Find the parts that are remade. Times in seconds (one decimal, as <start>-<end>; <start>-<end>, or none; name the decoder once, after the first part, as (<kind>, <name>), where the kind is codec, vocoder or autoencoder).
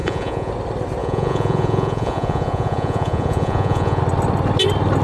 0.0-0.5 (vocoder, Vocos); 1.0-4.0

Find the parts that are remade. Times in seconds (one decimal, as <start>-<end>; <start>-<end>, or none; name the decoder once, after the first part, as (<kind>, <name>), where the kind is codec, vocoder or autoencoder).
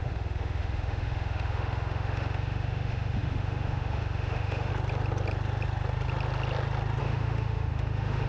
0.0-4.7 (autoencoder, DAC-VAE); 7.0-8.3